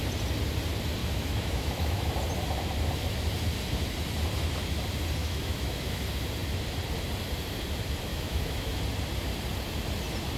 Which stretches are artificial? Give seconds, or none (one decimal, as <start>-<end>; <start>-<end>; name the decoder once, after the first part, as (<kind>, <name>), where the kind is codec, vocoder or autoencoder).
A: 1.0-2.1 (autoencoder, DAC-VAE); 5.2-6.0; 8.1-8.8